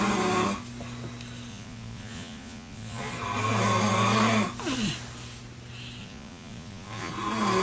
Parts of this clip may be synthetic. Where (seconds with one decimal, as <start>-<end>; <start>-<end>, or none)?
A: 1.5-3.1; 6.0-7.1